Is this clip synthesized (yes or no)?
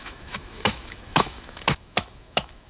yes